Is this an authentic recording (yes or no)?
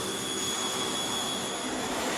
no